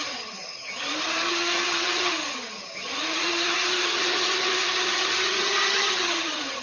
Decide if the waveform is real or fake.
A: fake